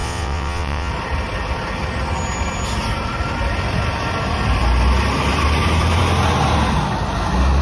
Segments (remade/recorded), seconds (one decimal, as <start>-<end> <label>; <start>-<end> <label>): 0.0-0.9 remade; 0.9-7.6 recorded